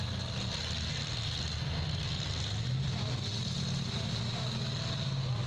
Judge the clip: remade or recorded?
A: recorded